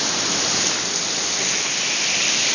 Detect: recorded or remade recorded